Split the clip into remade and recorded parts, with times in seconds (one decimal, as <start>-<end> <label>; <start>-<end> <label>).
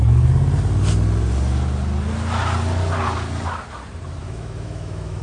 0.0-4.2 recorded; 4.2-5.2 remade